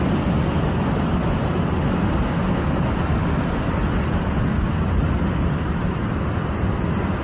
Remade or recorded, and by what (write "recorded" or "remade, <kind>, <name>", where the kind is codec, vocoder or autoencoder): recorded